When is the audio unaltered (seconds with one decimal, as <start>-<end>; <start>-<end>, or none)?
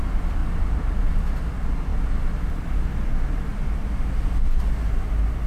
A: 0.0-0.4; 1.5-5.5